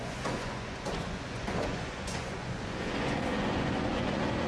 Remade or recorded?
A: remade